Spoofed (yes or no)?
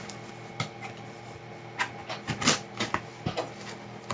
no